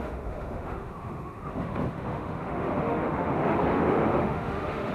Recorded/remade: remade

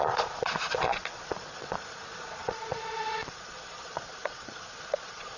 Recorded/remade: remade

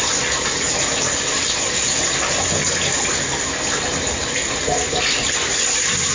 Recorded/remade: recorded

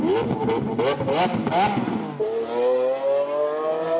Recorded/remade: recorded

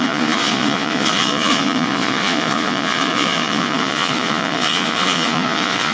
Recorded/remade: remade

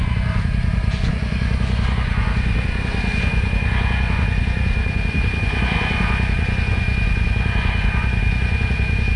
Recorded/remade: remade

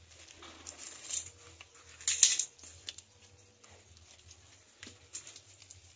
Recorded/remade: recorded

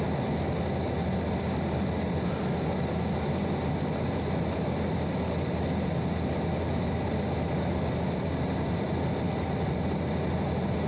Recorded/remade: recorded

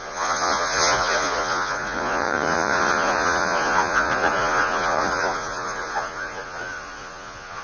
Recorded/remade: remade